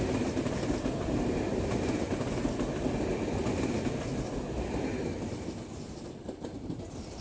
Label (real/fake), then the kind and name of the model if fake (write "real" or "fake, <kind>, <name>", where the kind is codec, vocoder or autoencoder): real